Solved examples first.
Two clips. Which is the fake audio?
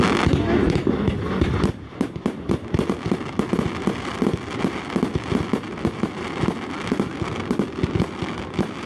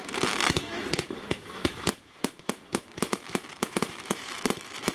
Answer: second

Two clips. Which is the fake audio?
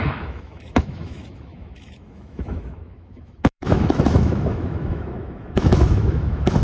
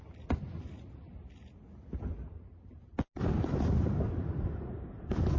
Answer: first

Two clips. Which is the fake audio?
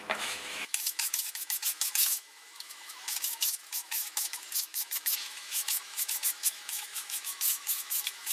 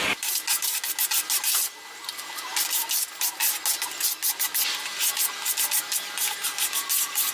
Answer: first